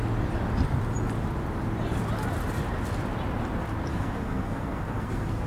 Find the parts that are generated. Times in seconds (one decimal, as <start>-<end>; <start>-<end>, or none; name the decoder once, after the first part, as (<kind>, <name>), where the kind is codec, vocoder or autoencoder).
3.9-5.5 (codec, SNAC)